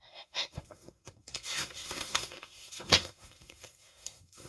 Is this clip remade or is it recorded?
remade